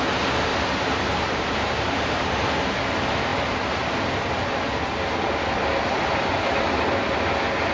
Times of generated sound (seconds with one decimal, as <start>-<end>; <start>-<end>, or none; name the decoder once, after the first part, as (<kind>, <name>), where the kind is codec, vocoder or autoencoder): 0.5-2.6 (vocoder, BigVGAN v2)